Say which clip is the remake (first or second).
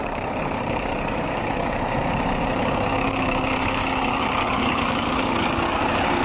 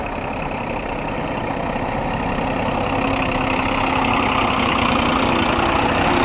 first